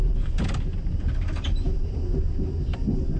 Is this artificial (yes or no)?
no